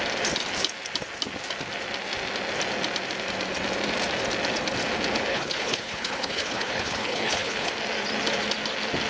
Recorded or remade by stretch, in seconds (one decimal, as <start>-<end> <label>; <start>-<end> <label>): 0.0-5.3 recorded; 5.3-7.7 remade; 7.7-9.1 recorded